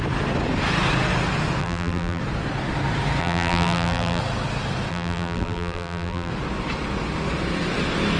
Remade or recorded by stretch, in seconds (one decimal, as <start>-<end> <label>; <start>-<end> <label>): 0.0-1.6 recorded; 1.6-2.2 remade; 2.2-3.2 recorded; 3.2-4.2 remade; 4.2-4.9 recorded; 4.9-6.3 remade; 6.3-8.2 recorded

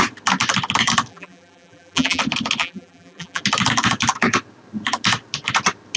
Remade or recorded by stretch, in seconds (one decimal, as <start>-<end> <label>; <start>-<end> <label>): 0.0-1.1 recorded; 1.1-2.2 remade; 2.2-2.6 recorded; 2.6-3.4 remade; 3.4-6.0 recorded

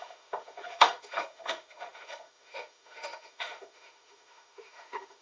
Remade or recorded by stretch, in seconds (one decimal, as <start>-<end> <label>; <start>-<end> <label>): 0.0-5.2 remade

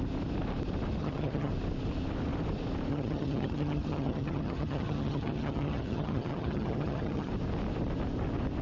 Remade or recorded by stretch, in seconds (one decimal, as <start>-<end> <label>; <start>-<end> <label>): 0.0-1.0 recorded; 1.0-1.5 remade; 1.5-2.9 recorded; 2.9-7.3 remade; 7.3-8.6 recorded

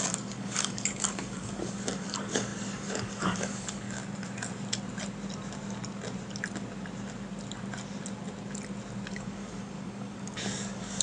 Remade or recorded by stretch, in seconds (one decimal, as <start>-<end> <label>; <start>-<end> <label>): 0.0-4.0 remade; 4.0-9.1 recorded; 9.1-11.0 remade

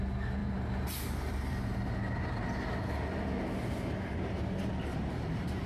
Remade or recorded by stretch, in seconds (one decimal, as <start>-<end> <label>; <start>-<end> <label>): 0.0-0.4 recorded; 0.4-1.9 remade; 1.9-4.9 recorded; 4.9-5.7 remade